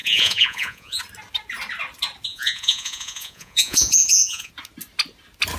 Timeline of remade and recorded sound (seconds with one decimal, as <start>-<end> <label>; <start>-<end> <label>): 0.0-1.0 remade; 1.0-2.3 recorded; 2.3-4.5 remade; 4.5-5.6 recorded